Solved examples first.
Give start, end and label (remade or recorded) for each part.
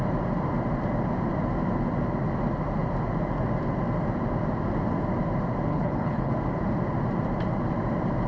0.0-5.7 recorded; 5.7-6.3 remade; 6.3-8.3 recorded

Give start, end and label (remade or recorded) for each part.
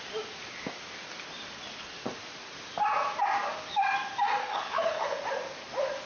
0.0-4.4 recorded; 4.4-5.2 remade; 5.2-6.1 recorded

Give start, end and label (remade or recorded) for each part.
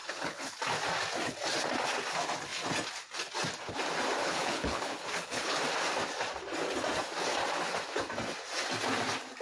0.0-0.6 remade; 0.6-4.2 recorded; 4.2-5.6 remade; 5.6-9.4 recorded